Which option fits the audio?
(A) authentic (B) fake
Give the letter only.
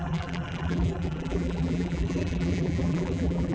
B